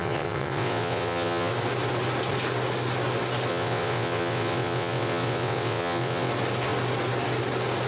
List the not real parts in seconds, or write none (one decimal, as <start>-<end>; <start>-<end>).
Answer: 0.0-1.5; 3.5-6.3